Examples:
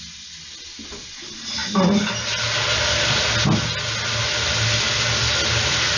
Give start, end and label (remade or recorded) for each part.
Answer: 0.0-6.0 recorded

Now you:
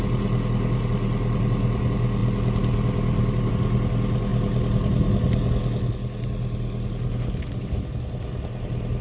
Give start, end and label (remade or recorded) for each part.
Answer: 0.0-9.0 recorded